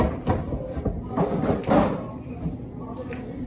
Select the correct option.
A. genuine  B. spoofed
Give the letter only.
A